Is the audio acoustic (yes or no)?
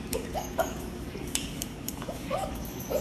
no